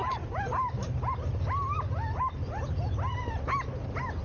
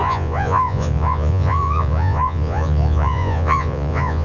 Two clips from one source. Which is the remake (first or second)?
second